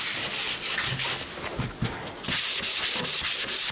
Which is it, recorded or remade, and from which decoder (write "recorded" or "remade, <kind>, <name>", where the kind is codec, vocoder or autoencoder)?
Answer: recorded